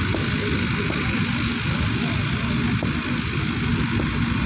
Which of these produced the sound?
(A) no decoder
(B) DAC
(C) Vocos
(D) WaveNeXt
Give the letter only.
A